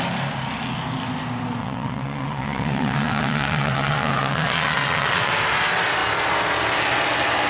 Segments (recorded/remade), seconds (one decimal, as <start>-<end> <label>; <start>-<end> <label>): 0.0-1.6 recorded; 1.6-5.3 remade; 5.3-7.5 recorded